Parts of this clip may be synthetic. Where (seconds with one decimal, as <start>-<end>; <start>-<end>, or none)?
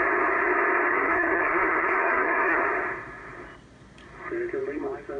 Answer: 0.9-2.6